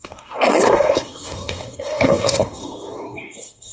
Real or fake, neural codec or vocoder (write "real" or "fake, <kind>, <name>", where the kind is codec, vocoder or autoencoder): fake, codec, SNAC